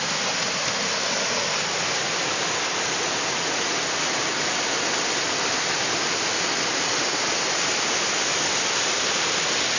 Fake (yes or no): no